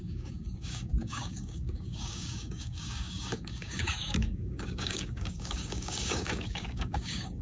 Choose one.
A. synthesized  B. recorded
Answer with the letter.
A